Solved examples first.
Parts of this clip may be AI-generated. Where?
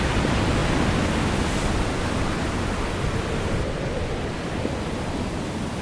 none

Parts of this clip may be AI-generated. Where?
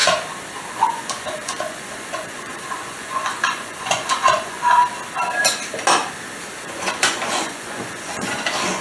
0.7-4.8 (vocoder, Vocos); 6.6-8.8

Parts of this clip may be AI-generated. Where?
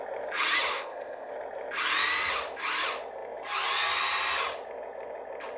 0.7-1.3 (codec, ZipCodec)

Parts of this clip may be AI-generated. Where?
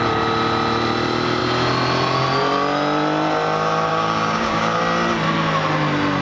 3.9-4.8 (codec, DAC)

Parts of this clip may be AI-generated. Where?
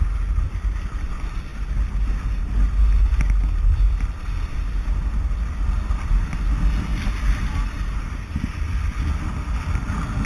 none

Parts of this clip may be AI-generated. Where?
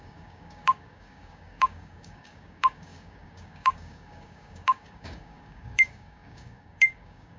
0.0-7.4 (codec, DAC)